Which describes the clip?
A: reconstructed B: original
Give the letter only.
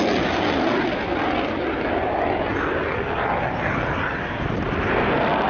B